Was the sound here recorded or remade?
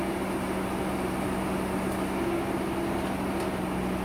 recorded